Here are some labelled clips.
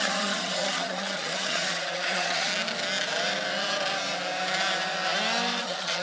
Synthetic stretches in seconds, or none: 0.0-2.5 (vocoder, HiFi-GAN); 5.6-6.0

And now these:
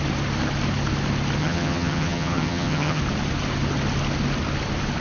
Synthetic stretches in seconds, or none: 1.4-3.0 (vocoder, HiFi-GAN)